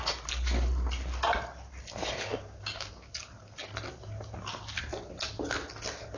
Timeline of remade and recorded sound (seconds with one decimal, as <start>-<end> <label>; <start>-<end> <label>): 0.0-2.3 recorded; 2.3-3.1 remade; 3.1-6.2 recorded